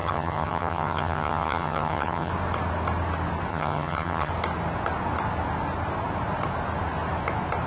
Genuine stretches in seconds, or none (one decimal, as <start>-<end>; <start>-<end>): 2.3-3.5; 4.3-7.7